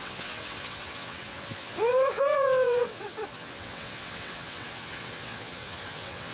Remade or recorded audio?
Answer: remade